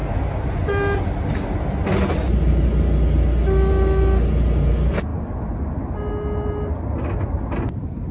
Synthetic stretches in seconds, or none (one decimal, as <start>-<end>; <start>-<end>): none